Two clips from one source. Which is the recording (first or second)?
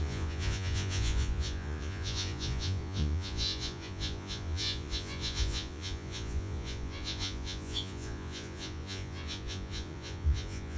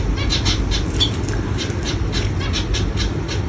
second